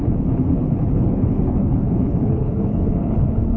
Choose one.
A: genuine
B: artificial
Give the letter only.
B